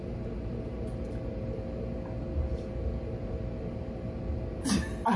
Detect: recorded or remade recorded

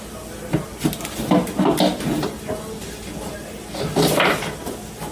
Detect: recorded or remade recorded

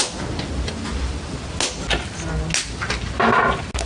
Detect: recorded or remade recorded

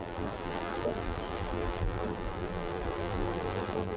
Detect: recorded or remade remade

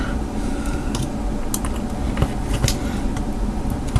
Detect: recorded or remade recorded